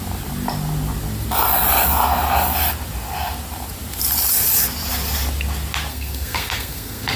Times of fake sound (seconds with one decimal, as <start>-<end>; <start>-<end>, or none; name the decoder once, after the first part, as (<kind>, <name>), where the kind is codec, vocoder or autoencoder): 5.9-7.2 (codec, SNAC)